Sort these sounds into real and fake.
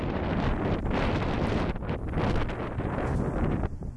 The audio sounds real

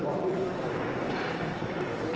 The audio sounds fake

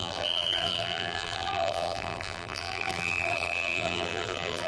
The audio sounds fake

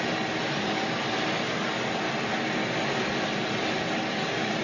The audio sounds real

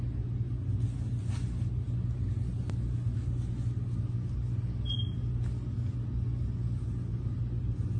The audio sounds real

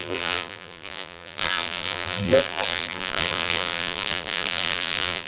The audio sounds fake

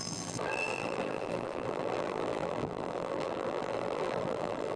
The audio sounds fake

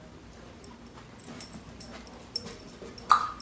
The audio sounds fake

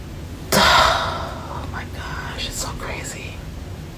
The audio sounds real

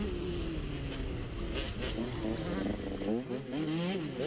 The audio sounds real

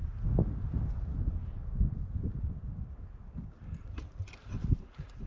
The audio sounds real